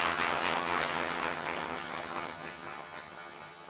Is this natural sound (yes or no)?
no